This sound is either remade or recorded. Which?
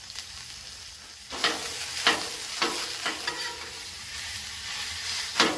recorded